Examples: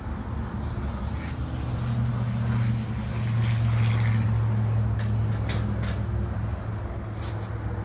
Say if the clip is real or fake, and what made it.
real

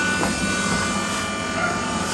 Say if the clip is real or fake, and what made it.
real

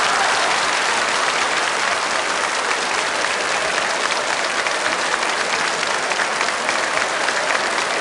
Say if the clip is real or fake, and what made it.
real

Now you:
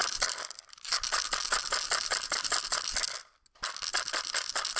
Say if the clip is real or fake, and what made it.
real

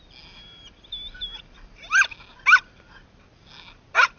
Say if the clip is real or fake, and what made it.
real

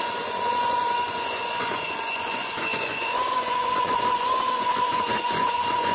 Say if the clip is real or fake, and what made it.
fake, vocoder, Vocos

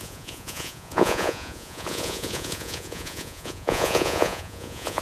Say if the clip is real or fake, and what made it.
fake, vocoder, Vocos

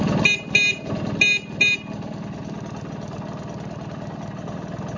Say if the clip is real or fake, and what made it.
real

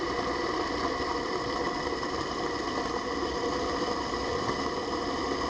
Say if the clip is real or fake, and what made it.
real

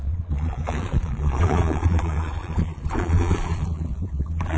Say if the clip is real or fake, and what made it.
fake, vocoder, Vocos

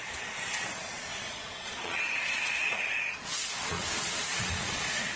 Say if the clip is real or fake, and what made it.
fake, vocoder, Vocos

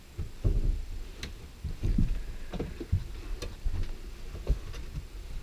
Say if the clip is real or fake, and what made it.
real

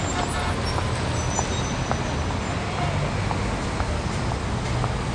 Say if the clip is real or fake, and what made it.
real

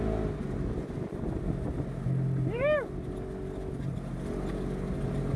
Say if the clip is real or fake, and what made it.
real